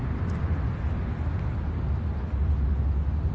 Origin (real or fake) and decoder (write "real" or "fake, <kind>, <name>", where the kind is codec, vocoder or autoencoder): real